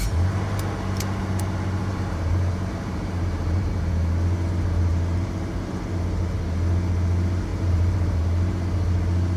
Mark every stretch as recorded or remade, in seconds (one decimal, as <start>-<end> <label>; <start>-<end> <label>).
0.0-1.8 recorded; 1.8-3.9 remade; 3.9-4.9 recorded; 4.9-5.7 remade; 5.7-7.5 recorded; 7.5-8.2 remade; 8.2-9.4 recorded